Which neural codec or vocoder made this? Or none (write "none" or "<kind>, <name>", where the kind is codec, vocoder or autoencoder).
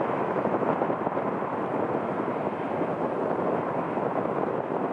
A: none